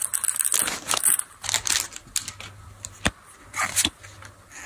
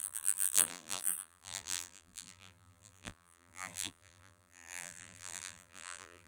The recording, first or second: first